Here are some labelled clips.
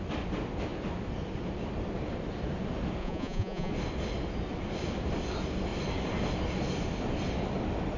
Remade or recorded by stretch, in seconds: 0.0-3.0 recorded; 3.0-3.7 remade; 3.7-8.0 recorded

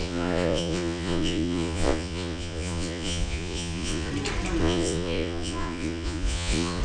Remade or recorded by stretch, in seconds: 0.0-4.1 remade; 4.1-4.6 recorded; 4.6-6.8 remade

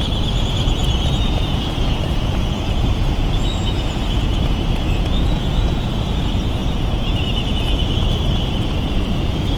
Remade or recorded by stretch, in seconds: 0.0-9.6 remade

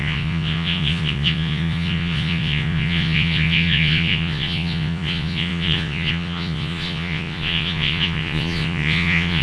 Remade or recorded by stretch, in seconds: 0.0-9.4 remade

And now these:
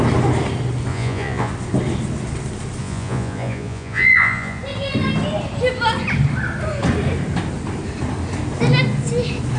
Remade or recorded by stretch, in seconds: 0.0-0.9 recorded; 0.9-1.5 remade; 1.5-2.8 recorded; 2.8-4.6 remade; 4.6-9.6 recorded

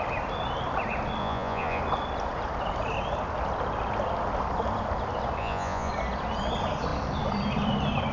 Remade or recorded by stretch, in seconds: 0.0-1.2 recorded; 1.2-1.8 remade; 1.8-5.4 recorded; 5.4-5.9 remade; 5.9-8.1 recorded

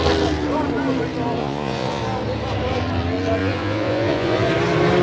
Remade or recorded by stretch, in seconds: 0.0-1.4 recorded; 1.4-2.0 remade; 2.0-3.4 recorded; 3.4-4.5 remade; 4.5-5.0 recorded